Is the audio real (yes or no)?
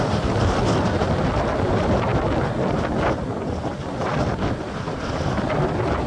yes